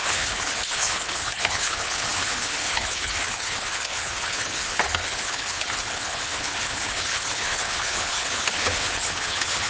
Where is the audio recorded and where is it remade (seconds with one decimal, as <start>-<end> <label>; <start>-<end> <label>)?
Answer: 0.0-9.7 remade